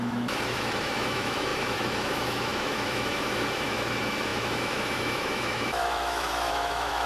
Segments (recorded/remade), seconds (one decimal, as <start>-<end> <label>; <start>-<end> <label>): 0.0-7.1 remade